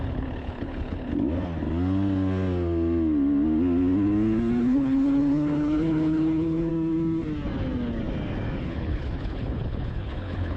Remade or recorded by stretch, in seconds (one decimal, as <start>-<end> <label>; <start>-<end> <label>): 0.0-1.1 remade; 1.1-4.6 recorded; 4.6-6.7 remade; 6.7-8.6 recorded; 8.6-10.6 remade